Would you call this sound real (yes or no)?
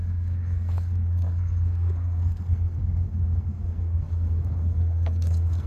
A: no